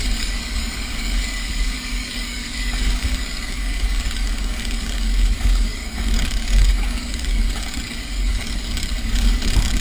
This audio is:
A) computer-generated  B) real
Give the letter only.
A